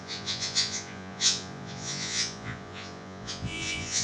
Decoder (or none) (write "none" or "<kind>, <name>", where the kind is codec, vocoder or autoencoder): vocoder, Vocos